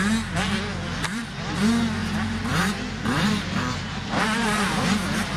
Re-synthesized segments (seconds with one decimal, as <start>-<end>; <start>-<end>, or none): 0.7-1.2; 2.0-5.4